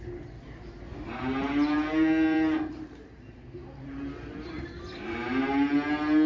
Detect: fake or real fake